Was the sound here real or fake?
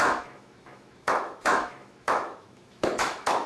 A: fake